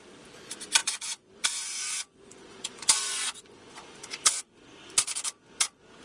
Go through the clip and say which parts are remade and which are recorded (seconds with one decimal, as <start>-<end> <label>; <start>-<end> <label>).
0.0-0.8 recorded; 0.8-4.4 remade; 4.4-6.0 recorded